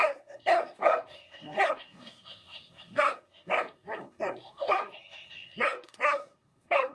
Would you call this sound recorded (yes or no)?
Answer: no